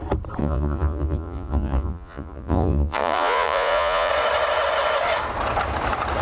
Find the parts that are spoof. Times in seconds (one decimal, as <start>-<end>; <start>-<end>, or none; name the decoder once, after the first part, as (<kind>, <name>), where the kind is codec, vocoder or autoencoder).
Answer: 0.4-4.1 (vocoder, Vocos)